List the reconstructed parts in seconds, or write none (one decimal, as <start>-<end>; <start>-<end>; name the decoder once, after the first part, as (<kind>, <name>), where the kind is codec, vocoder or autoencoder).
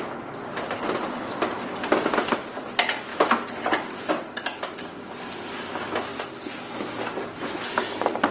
none